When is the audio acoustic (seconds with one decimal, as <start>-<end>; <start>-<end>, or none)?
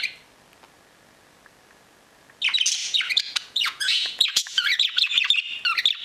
0.0-2.8; 5.1-6.0